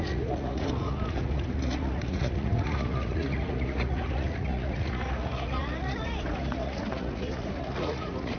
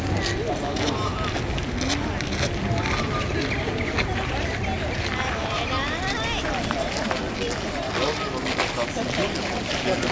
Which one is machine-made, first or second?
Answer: first